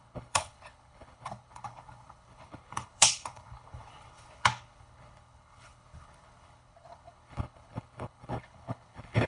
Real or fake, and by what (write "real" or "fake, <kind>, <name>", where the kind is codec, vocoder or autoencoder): fake, codec, HILCodec